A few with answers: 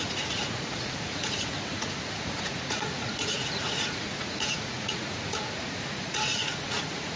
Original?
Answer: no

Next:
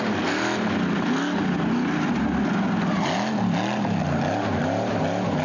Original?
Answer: yes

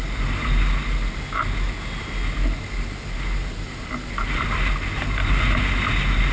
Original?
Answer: yes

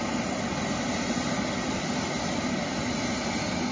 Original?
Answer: yes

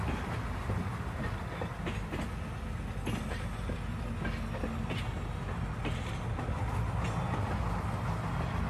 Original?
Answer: yes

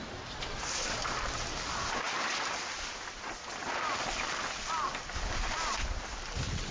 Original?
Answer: yes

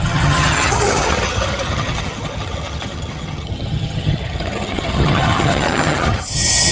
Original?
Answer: no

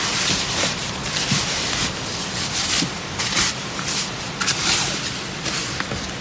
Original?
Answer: yes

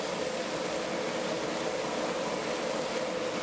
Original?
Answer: yes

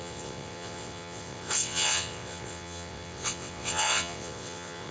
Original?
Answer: no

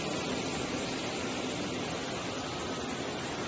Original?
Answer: yes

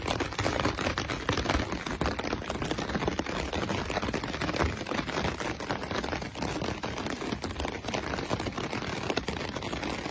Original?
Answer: yes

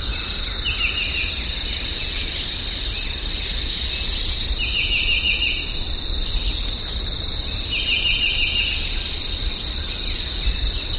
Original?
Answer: yes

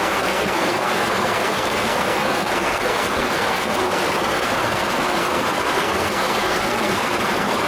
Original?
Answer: no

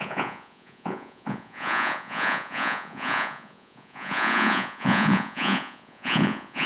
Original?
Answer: no